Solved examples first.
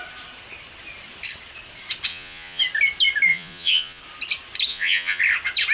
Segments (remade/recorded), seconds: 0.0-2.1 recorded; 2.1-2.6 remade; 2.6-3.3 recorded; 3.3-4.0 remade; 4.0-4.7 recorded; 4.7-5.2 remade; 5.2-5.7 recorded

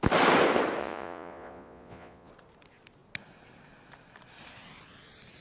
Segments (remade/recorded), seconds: 0.0-0.8 recorded; 0.8-2.3 remade; 2.3-5.4 recorded